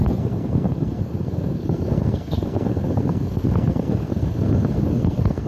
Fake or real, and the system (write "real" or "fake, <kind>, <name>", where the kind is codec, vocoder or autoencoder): fake, codec, SNAC